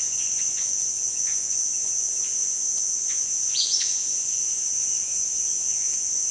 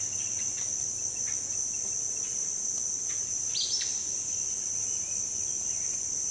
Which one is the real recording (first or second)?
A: second